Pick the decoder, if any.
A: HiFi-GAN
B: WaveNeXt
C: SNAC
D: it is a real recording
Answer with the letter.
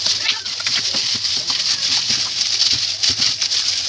D